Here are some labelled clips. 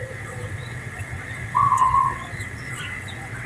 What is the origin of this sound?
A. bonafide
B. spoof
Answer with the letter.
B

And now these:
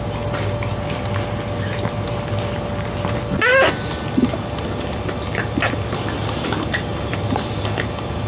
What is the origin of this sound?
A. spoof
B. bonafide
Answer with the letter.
B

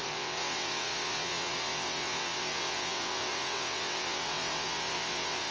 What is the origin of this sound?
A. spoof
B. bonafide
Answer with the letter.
A